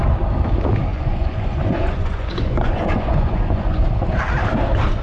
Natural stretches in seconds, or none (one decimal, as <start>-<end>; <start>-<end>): 0.0-0.9; 3.9-5.0